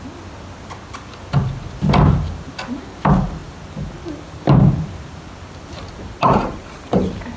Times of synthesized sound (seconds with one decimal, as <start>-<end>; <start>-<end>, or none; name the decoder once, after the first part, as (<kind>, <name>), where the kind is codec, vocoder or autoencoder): none